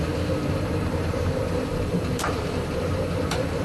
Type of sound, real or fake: fake